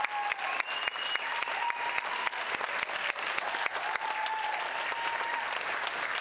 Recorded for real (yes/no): yes